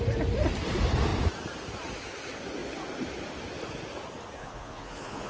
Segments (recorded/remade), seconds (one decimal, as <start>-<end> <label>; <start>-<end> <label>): 0.0-4.4 recorded; 4.4-5.3 remade